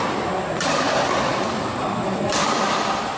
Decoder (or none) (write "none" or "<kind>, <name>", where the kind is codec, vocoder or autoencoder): none